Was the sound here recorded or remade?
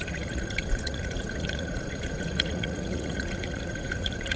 remade